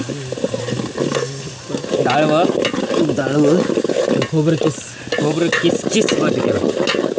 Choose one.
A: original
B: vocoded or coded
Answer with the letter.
A